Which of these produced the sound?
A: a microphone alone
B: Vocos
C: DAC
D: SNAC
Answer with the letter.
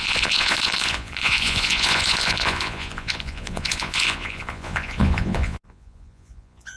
B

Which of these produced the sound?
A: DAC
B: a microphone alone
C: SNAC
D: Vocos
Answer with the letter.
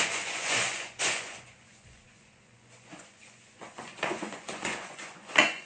D